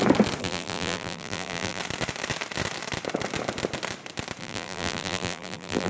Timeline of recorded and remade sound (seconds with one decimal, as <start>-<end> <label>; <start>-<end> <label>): 0.0-0.4 recorded; 0.4-1.8 remade; 1.8-4.4 recorded; 4.4-5.9 remade